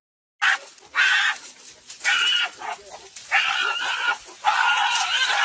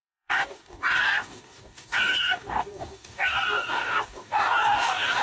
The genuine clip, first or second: first